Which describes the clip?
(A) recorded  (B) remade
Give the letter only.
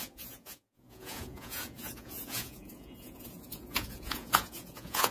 B